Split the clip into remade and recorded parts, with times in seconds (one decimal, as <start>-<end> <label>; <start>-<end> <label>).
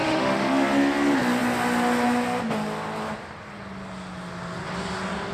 0.0-0.5 remade; 0.5-5.3 recorded